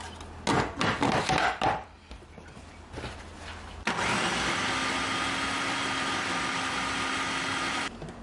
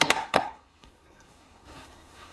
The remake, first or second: second